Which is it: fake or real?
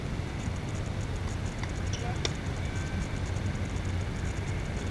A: real